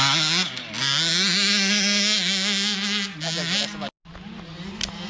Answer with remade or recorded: recorded